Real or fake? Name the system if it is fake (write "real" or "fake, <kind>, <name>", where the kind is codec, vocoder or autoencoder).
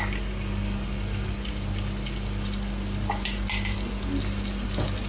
real